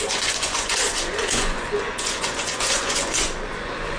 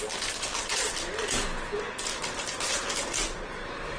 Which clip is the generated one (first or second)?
first